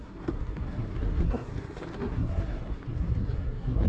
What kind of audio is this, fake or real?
fake